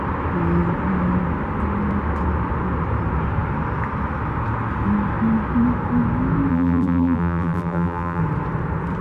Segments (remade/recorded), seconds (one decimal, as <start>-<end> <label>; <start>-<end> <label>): 0.0-6.5 recorded; 6.5-8.2 remade; 8.2-9.0 recorded